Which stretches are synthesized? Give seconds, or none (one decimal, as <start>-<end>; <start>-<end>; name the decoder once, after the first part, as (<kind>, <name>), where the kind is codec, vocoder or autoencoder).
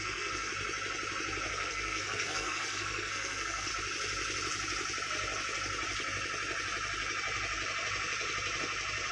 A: 0.0-0.5 (codec, SNAC); 1.5-3.7